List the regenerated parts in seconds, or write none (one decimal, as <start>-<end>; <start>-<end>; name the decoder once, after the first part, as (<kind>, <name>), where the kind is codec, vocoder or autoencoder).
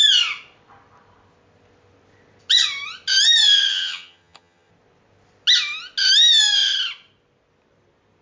3.7-4.7 (vocoder, HiFi-GAN)